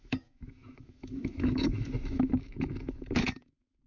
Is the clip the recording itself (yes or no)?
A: no